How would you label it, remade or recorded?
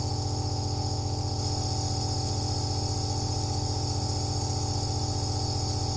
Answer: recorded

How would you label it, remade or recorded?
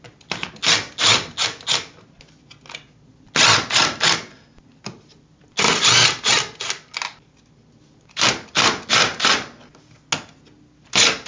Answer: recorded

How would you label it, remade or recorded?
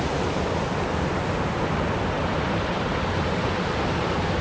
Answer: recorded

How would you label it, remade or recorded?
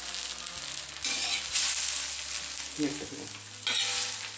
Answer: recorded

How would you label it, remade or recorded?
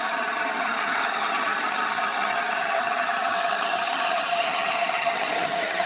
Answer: remade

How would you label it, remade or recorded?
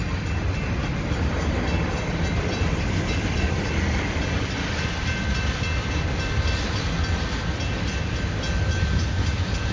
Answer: recorded